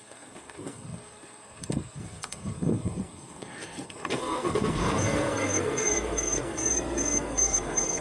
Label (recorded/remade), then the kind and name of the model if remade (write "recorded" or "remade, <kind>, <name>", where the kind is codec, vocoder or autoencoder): remade, codec, SNAC